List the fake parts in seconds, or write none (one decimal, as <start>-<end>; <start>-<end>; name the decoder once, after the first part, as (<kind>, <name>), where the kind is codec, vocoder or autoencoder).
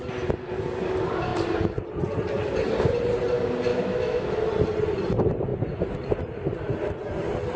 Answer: 3.7-4.3 (autoencoder, DAC-VAE)